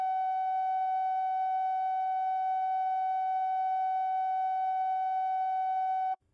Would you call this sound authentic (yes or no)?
no